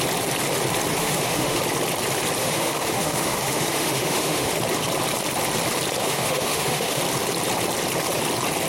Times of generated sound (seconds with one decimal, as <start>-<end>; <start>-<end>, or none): 1.0-1.6; 2.4-4.5; 6.0-7.0